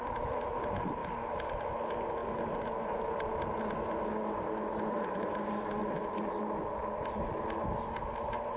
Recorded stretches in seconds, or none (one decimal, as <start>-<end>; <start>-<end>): 0.0-5.8; 6.4-8.6